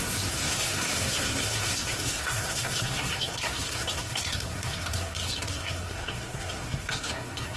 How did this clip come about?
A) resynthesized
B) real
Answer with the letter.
A